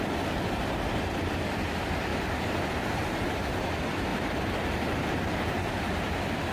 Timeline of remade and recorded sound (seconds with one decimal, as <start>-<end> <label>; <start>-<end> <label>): 0.0-2.1 recorded; 2.1-3.3 remade; 3.3-4.1 recorded; 4.1-5.8 remade; 5.8-6.5 recorded